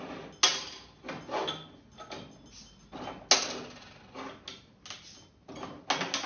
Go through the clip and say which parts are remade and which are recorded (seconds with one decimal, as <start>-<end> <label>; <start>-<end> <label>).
0.0-6.3 recorded